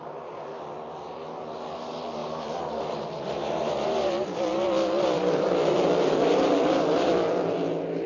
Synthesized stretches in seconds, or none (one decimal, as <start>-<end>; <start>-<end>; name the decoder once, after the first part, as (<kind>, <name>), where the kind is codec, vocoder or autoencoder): 2.2-7.1 (vocoder, BigVGAN v2)